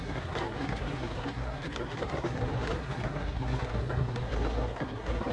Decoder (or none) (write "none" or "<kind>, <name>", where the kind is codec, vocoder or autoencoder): codec, SNAC